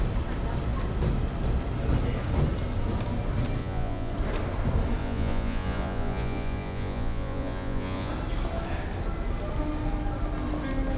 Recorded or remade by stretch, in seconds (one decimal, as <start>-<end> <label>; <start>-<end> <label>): 0.0-3.6 recorded; 3.6-4.1 remade; 4.1-5.0 recorded; 5.0-8.1 remade; 8.1-11.0 recorded